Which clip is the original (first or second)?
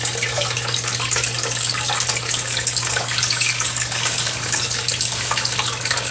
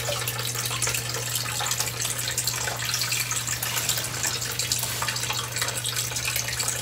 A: second